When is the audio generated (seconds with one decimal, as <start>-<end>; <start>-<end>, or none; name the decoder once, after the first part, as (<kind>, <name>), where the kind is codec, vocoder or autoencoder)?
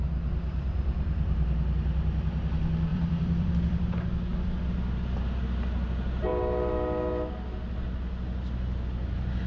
2.9-3.9 (vocoder, BigVGAN v2)